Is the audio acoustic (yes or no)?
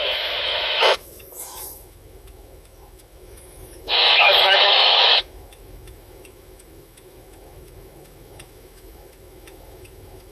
no